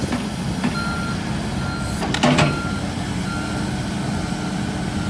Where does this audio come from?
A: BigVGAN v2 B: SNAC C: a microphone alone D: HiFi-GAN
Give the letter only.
C